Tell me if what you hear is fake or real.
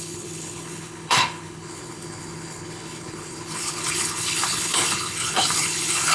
fake